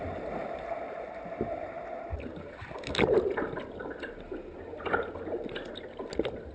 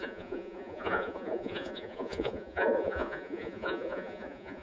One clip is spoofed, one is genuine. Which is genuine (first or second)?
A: first